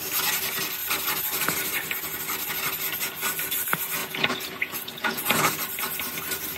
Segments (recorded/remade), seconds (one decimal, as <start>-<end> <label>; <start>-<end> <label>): 0.0-4.0 recorded; 4.0-5.5 remade; 5.5-6.6 recorded